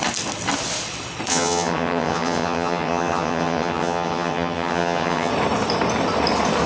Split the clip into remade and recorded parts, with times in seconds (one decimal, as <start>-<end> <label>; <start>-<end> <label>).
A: 0.0-1.3 recorded; 1.3-5.3 remade; 5.3-6.7 recorded